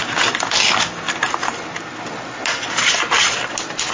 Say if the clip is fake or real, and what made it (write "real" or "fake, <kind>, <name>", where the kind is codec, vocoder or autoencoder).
real